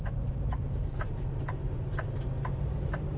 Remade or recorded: remade